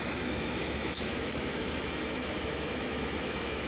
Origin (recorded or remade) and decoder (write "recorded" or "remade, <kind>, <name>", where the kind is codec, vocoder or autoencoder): remade, autoencoder, DAC-VAE